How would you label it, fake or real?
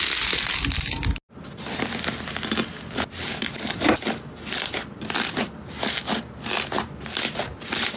real